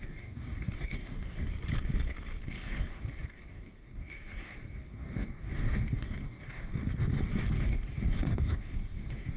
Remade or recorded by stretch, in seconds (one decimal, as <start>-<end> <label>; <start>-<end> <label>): 0.0-1.5 remade; 1.5-2.4 recorded; 2.4-6.7 remade; 6.7-7.5 recorded; 7.5-9.4 remade